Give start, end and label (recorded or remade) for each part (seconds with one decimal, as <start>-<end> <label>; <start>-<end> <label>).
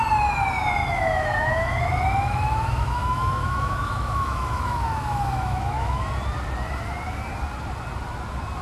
0.0-0.8 recorded; 0.8-6.0 remade; 6.0-8.6 recorded